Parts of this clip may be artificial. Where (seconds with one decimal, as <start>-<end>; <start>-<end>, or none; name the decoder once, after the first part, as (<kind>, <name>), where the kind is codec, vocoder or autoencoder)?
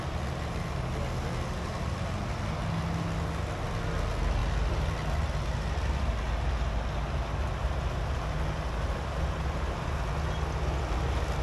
none